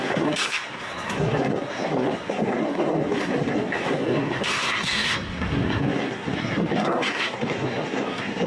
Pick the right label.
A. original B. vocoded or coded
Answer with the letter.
B